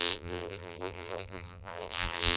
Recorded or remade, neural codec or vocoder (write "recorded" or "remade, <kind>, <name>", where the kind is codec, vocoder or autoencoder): remade, vocoder, BigVGAN v2